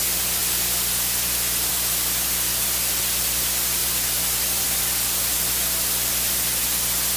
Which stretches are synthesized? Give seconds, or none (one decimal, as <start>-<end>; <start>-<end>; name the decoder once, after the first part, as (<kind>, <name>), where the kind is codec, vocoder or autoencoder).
3.8-6.1 (vocoder, BigVGAN v2)